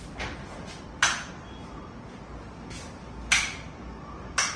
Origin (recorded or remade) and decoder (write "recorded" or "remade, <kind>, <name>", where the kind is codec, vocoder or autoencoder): recorded